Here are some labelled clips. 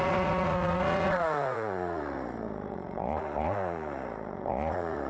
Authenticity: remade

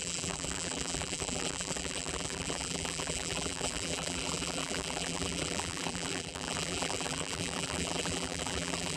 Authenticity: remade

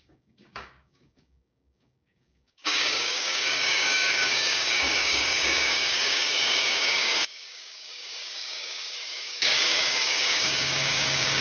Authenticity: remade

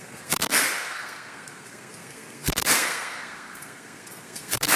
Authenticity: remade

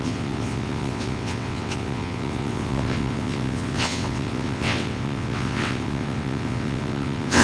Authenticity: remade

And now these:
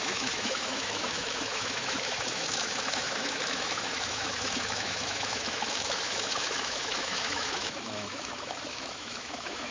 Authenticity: remade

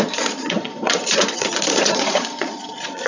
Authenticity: remade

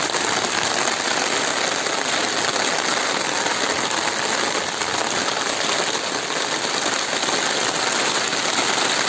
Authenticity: recorded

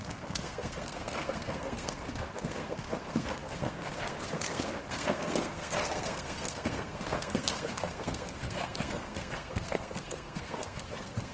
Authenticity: remade